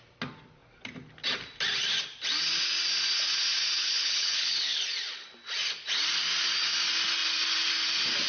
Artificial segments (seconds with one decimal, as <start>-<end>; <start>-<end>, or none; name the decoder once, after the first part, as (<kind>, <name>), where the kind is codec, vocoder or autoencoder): 3.8-4.8 (codec, HILCodec)